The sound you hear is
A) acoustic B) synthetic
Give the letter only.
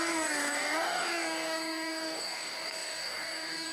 B